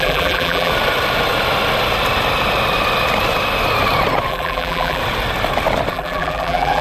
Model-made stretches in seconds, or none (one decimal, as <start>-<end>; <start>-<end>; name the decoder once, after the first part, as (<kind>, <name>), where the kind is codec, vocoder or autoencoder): 0.0-0.7 (vocoder, BigVGAN v2); 4.3-5.0; 5.9-6.8